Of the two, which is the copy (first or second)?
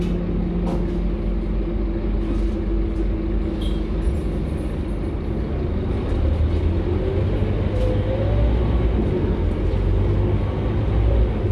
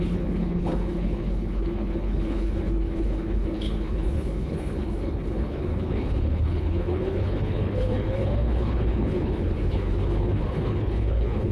second